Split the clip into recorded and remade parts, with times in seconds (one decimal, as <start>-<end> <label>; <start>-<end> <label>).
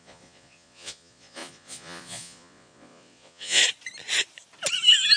0.0-3.6 remade; 3.6-5.2 recorded